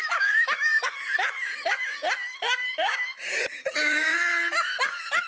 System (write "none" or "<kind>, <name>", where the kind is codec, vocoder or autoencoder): autoencoder, DAC-VAE